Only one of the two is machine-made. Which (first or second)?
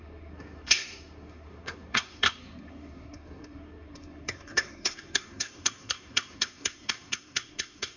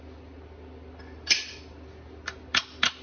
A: first